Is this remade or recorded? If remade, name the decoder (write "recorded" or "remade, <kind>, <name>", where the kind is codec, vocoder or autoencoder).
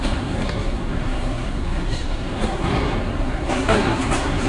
remade, codec, SNAC